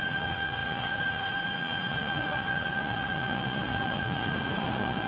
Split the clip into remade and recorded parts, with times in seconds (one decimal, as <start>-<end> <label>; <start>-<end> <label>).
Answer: 0.0-5.1 remade